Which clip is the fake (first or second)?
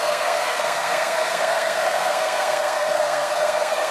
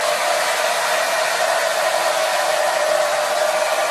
first